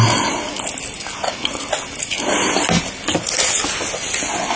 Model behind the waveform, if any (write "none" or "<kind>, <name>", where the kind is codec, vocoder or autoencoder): none